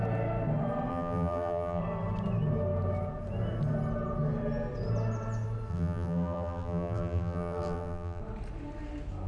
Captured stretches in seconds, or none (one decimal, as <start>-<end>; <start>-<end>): 0.0-0.9; 1.8-5.7; 8.2-9.3